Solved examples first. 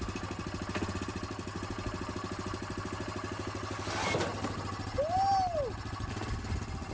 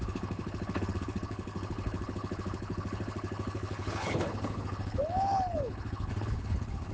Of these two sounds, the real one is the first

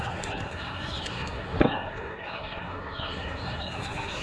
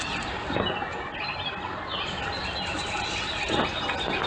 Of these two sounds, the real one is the second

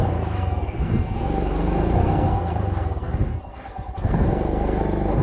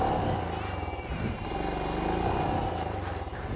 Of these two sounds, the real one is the second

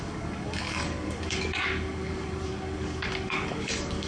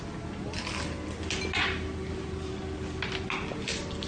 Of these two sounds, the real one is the second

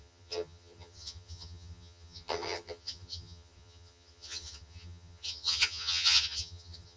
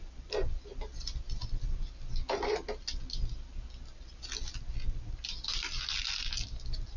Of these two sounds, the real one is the second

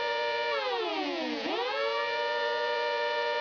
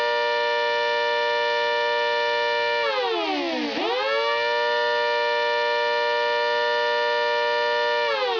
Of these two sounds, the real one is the second